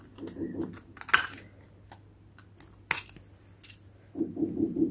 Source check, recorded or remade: recorded